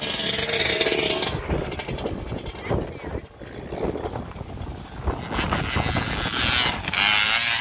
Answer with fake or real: real